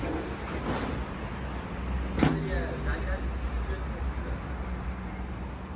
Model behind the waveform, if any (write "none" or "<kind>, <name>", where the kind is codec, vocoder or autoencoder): none